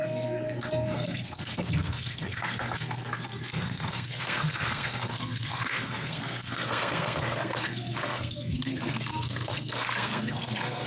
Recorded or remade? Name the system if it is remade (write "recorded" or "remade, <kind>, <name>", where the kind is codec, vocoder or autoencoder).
remade, codec, SNAC